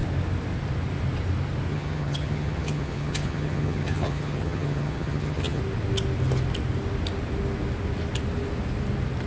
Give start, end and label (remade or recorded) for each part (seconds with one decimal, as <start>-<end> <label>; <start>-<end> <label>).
0.0-1.7 recorded; 1.7-5.6 remade; 5.6-9.3 recorded